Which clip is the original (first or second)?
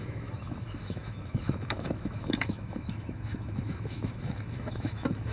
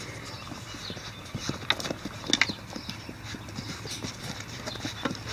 second